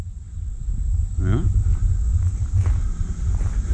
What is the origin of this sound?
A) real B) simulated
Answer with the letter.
A